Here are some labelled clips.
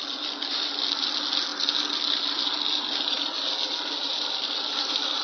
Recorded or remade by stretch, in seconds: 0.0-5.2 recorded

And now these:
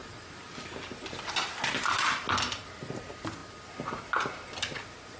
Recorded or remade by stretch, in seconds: 0.0-5.2 recorded

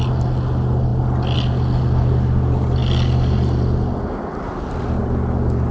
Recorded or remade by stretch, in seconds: 0.0-5.7 recorded

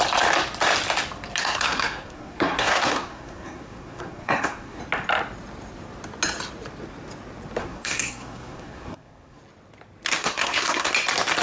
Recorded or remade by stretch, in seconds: 0.0-1.4 recorded; 1.4-4.8 remade; 4.8-7.6 recorded; 7.6-9.4 remade; 9.4-10.2 recorded; 10.2-10.9 remade; 10.9-11.4 recorded